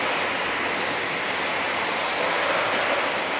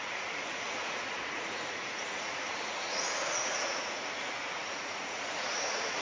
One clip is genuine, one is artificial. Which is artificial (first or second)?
second